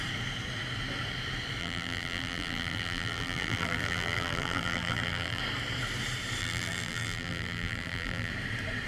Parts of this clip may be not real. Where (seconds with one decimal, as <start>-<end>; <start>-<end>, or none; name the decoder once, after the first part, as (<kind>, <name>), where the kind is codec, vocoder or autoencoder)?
1.6-5.4 (vocoder, BigVGAN v2); 6.4-8.3